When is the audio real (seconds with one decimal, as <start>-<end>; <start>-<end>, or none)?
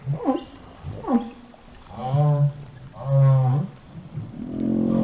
2.0-3.8